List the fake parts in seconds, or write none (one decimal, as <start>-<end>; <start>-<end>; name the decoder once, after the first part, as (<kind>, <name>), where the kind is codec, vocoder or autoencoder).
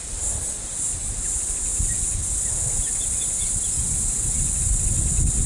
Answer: none